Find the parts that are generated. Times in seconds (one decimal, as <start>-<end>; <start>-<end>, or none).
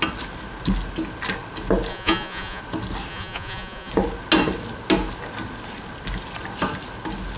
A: 1.9-2.6; 3.1-3.9